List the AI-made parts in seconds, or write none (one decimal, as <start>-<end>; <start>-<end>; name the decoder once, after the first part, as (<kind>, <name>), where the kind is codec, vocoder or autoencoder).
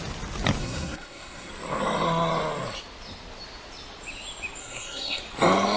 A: 0.6-1.5 (codec, SNAC); 4.6-5.2